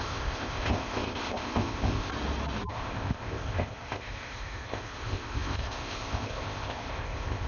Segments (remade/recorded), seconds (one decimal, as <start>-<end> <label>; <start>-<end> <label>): 0.0-2.1 remade; 2.1-2.7 recorded; 2.7-7.5 remade